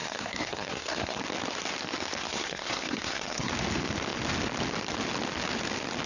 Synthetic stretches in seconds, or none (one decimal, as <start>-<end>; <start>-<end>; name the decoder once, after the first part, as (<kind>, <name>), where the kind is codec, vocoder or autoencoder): 0.0-1.2 (codec, SNAC); 2.2-3.5